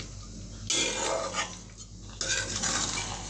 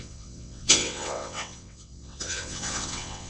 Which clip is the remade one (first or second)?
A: second